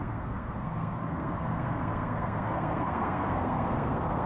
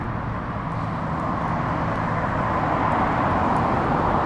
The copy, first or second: first